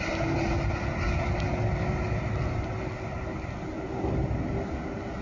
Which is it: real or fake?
real